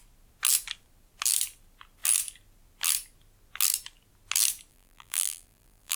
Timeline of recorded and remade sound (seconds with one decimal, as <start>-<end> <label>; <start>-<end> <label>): 0.0-4.7 recorded; 4.7-6.0 remade